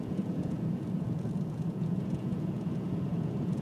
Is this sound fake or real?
fake